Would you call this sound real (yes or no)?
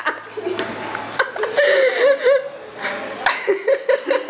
yes